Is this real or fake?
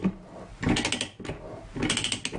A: real